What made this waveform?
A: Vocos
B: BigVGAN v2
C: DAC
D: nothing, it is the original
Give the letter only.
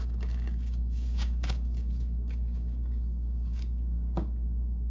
C